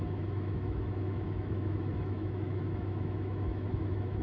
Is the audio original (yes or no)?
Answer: no